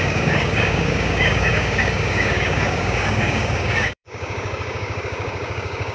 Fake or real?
fake